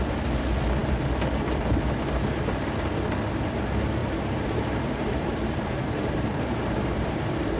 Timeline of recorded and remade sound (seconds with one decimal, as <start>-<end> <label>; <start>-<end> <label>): 0.0-4.0 recorded; 4.0-4.8 remade; 4.8-5.3 recorded; 5.3-7.6 remade